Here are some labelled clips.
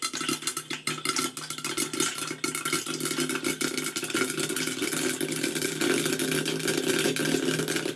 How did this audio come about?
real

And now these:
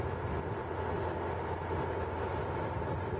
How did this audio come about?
real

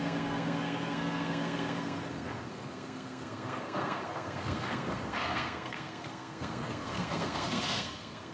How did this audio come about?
fake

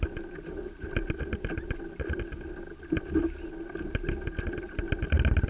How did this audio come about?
real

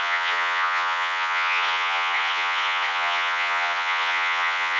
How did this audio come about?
fake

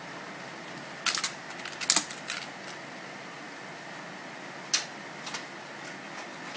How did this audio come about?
real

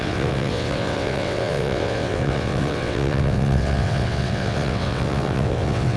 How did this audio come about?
fake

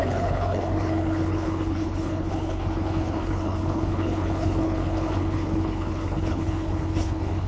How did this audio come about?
fake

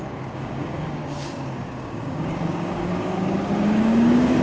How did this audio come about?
fake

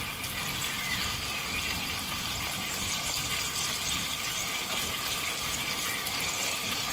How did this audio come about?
real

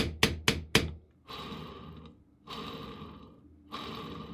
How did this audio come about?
real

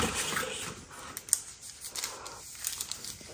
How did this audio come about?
real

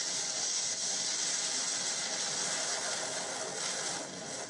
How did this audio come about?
real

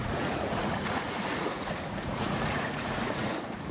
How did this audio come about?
fake